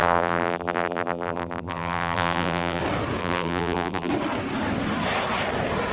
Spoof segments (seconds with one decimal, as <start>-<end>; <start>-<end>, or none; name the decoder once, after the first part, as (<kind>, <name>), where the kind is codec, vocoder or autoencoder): 0.0-2.8 (vocoder, BigVGAN v2); 3.2-4.1